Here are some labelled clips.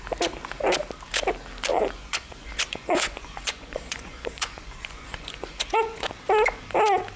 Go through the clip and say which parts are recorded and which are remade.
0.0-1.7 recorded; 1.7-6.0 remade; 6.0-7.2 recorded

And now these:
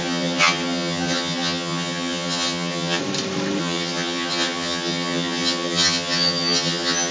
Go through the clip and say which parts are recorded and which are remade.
0.0-3.0 remade; 3.0-3.6 recorded; 3.6-7.1 remade

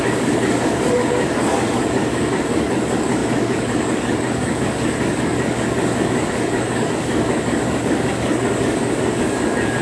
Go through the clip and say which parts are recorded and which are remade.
0.0-9.8 remade

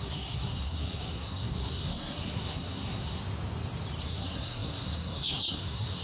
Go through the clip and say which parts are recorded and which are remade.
0.0-3.2 remade; 3.2-4.0 recorded; 4.0-6.0 remade

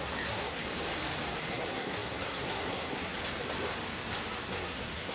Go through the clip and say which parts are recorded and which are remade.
0.0-0.6 remade; 0.6-1.5 recorded; 1.5-3.2 remade; 3.2-4.5 recorded; 4.5-5.1 remade

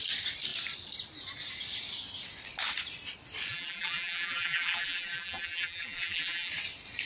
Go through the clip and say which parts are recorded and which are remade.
0.0-3.5 recorded; 3.5-6.5 remade; 6.5-7.1 recorded

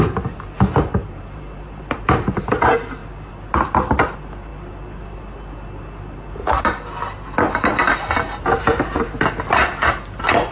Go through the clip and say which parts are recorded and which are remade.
0.0-0.7 recorded; 0.7-2.6 remade; 2.6-8.5 recorded; 8.5-9.2 remade; 9.2-10.5 recorded